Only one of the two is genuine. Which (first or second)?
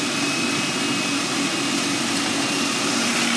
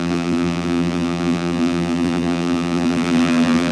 first